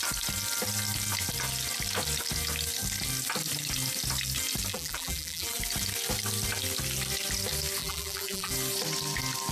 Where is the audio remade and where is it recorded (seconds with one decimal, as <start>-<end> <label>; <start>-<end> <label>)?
0.0-4.7 recorded; 4.7-5.6 remade; 5.6-7.8 recorded; 7.8-8.5 remade; 8.5-9.5 recorded